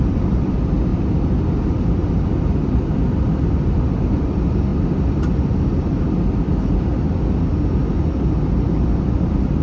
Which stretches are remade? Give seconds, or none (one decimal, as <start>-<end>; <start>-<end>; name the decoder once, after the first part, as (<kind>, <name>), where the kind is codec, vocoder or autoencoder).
0.0-0.9 (vocoder, BigVGAN v2); 2.5-6.9; 8.7-9.6